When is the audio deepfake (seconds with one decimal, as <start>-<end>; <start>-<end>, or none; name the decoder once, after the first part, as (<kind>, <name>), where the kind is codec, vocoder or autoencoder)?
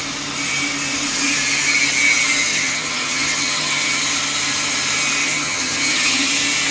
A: 2.5-4.0 (vocoder, HiFi-GAN); 5.2-6.3